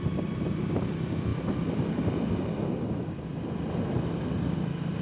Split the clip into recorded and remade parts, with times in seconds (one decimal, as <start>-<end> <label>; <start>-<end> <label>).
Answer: 0.0-1.3 recorded; 1.3-3.7 remade; 3.7-5.0 recorded